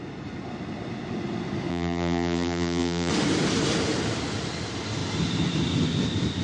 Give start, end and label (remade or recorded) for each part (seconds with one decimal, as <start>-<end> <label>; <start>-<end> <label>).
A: 0.0-1.7 recorded; 1.7-3.1 remade; 3.1-6.4 recorded